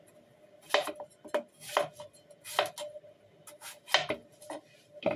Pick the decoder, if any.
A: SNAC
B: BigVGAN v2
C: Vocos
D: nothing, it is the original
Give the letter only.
D